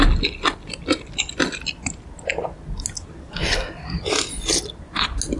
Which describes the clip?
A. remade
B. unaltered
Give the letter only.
B